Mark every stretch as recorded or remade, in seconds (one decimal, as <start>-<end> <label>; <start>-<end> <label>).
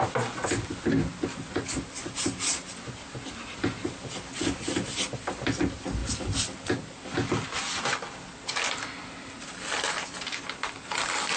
0.0-11.4 recorded